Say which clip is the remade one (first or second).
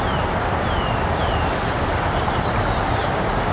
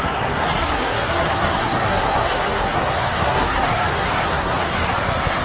second